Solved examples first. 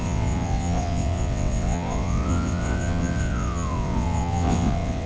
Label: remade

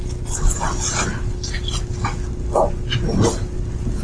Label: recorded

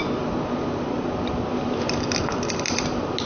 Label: recorded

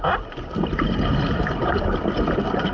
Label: recorded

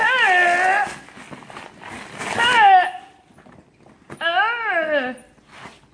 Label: recorded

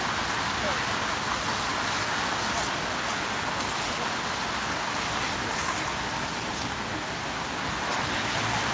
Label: recorded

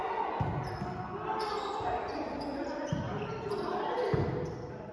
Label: recorded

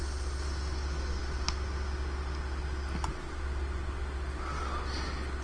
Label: recorded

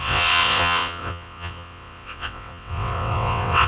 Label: remade